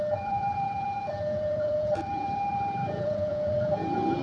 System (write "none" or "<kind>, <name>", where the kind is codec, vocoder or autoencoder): vocoder, Vocos